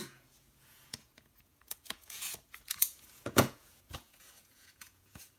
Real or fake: fake